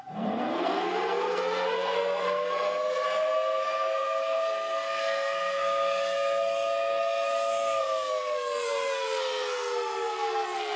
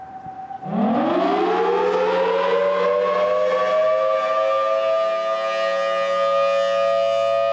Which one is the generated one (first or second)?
first